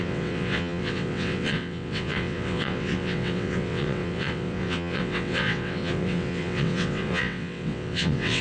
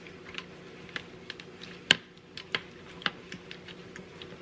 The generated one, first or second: first